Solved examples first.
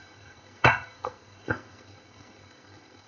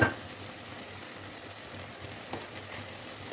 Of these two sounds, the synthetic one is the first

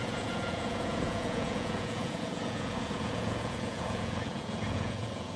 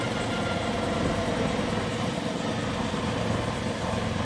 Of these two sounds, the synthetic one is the first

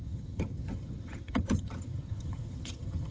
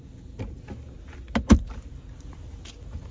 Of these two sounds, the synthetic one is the first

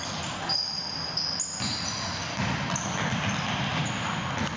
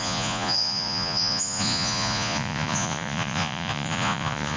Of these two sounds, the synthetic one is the second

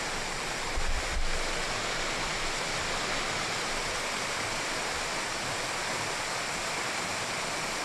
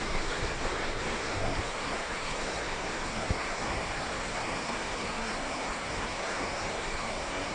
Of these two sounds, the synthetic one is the second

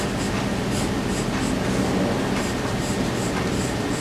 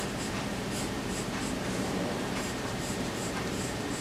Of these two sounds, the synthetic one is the second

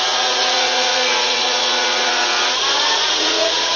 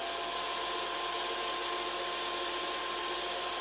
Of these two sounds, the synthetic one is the first